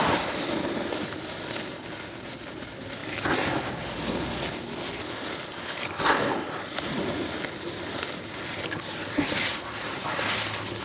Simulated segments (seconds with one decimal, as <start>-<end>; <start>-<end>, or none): none